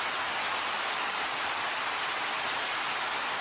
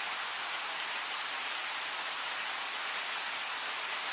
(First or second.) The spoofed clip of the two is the first